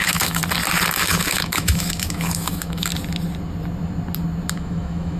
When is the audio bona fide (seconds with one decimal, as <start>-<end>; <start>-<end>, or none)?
0.4-0.9; 2.9-4.5